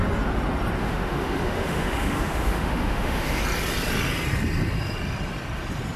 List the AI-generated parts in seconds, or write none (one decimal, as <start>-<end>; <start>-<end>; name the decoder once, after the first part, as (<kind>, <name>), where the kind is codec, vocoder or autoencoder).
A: 0.8-3.4 (autoencoder, DAC-VAE)